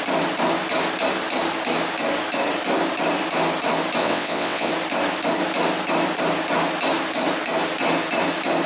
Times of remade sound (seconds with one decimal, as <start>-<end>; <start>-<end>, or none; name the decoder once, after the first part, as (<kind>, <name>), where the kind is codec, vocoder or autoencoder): 4.0-4.7 (vocoder, WaveNeXt)